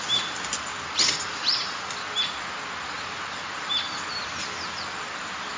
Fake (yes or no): no